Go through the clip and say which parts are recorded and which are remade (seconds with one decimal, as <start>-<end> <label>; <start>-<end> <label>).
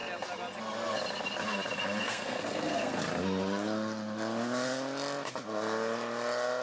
0.0-2.0 recorded; 2.0-3.0 remade; 3.0-6.6 recorded